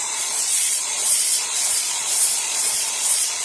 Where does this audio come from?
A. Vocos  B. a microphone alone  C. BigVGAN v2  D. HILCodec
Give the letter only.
A